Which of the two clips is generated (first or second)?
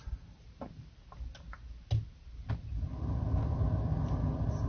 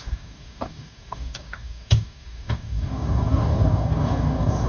second